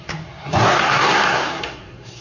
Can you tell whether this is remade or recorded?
remade